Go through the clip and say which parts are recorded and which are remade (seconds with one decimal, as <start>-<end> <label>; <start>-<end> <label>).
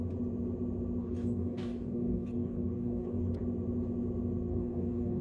0.0-1.0 recorded; 1.0-3.3 remade; 3.3-4.5 recorded; 4.5-5.2 remade